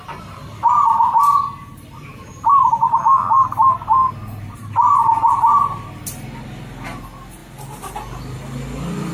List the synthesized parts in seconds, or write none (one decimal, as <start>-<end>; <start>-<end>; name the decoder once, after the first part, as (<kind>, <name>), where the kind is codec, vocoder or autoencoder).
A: none